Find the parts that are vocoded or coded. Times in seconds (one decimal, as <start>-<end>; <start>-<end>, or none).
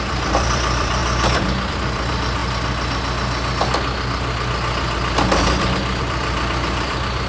0.0-1.0; 1.7-2.4; 6.0-7.3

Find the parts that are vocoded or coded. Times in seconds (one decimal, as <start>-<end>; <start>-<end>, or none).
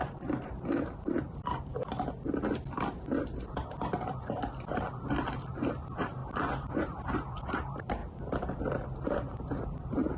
0.0-1.7; 5.7-8.0; 8.6-10.2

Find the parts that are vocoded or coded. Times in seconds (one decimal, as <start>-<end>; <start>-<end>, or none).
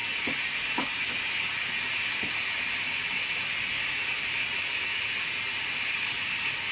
none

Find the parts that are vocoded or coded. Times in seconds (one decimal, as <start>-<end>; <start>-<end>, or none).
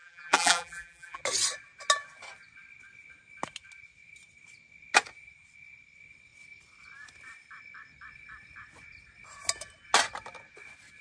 0.0-1.2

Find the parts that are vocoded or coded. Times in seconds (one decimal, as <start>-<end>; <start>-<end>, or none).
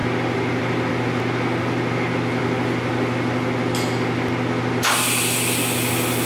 none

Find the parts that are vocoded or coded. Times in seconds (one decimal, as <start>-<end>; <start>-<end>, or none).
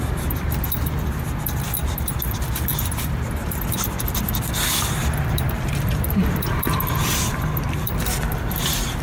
0.0-9.0